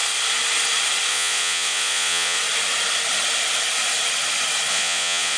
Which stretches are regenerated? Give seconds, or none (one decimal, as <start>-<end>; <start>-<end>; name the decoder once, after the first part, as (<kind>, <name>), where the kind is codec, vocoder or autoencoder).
1.1-2.4 (vocoder, Vocos); 4.7-5.4